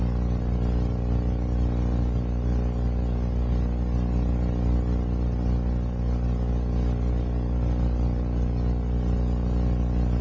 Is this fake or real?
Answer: real